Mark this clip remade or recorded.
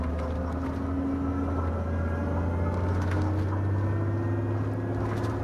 recorded